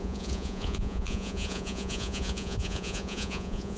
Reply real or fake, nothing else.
fake